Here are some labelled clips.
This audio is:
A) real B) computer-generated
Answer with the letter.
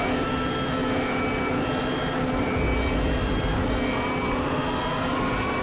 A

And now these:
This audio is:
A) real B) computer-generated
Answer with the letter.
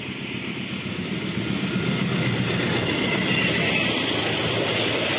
A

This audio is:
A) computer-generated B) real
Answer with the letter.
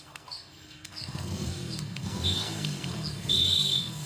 A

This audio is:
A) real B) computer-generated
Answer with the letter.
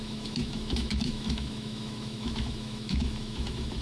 B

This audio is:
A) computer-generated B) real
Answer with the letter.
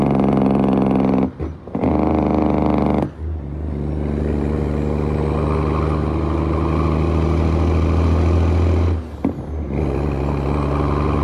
B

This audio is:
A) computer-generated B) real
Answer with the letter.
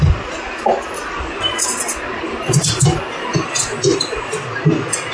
B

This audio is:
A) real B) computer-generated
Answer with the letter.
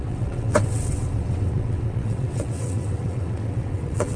B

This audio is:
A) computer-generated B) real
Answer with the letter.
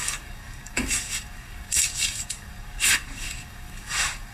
A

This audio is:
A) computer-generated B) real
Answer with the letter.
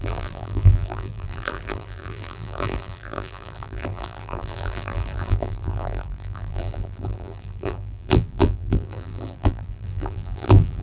A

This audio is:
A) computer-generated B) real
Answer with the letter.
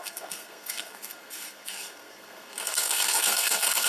A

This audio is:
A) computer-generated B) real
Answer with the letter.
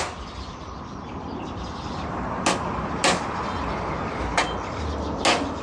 B